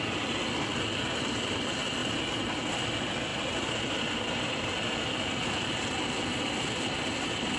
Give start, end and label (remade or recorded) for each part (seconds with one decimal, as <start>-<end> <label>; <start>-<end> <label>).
0.0-2.0 recorded; 2.0-2.6 remade; 2.6-3.3 recorded; 3.3-5.6 remade; 5.6-6.3 recorded; 6.3-7.6 remade